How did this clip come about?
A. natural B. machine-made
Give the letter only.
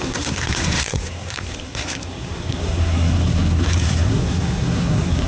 B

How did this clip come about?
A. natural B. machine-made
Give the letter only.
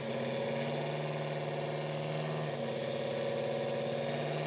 A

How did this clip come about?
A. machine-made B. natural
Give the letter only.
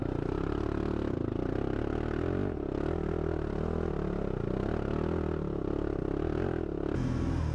B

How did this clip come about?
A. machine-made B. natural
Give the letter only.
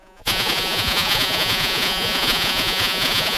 A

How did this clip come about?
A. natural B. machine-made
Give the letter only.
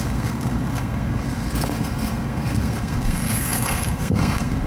B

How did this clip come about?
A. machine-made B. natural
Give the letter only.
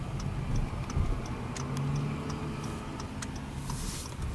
B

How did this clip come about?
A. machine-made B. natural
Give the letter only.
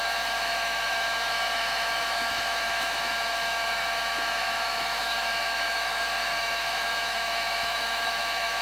A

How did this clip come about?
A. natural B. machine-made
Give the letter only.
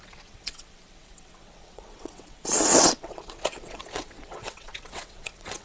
B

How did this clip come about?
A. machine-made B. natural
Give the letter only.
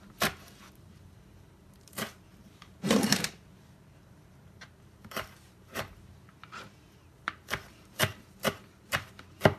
A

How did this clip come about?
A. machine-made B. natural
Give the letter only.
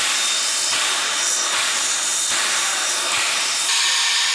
B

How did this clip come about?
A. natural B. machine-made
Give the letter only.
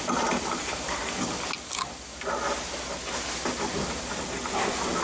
A